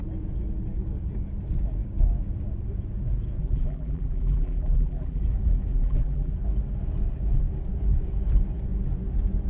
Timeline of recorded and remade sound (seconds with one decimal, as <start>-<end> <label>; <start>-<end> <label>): 0.0-3.4 recorded; 3.4-5.2 remade; 5.2-5.7 recorded; 5.7-6.3 remade; 6.3-9.5 recorded